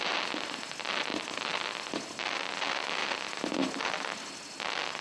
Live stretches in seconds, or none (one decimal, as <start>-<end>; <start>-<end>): 0.0-1.1; 2.6-3.0; 3.8-5.0